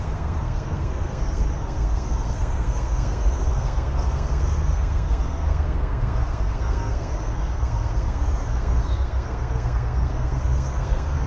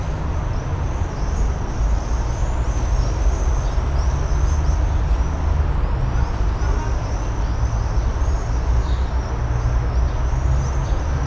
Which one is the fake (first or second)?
first